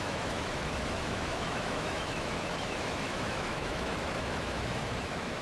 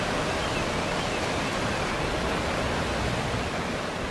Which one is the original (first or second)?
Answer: second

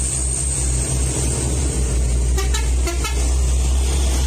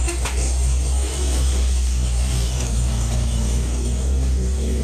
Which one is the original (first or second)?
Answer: first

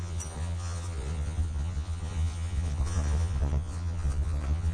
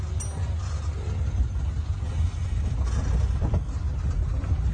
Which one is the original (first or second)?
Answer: second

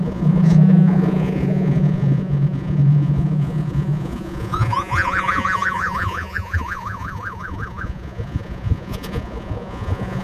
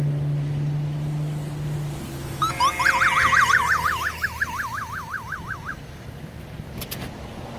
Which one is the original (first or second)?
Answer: second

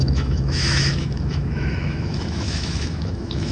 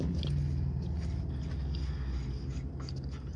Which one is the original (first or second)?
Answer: second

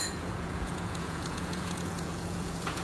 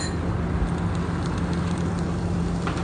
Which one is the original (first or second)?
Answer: second